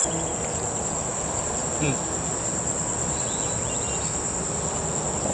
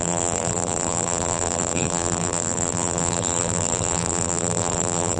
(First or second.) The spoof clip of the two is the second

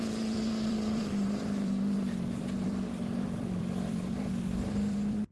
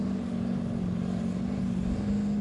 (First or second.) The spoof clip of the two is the first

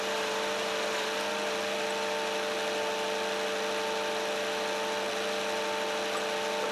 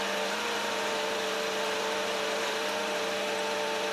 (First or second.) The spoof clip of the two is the second